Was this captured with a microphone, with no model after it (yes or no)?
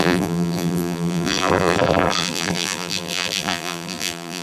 no